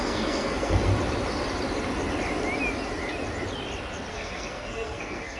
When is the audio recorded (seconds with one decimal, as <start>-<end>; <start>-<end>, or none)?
0.9-4.1